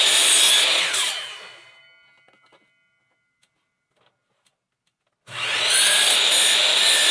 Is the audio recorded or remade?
recorded